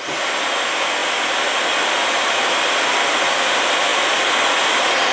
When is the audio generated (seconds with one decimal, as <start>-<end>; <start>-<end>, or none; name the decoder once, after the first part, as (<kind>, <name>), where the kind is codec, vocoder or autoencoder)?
none